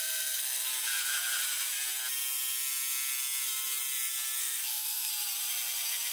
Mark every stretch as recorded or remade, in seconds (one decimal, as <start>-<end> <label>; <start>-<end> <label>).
0.0-0.7 remade; 0.7-4.4 recorded; 4.4-5.1 remade; 5.1-6.1 recorded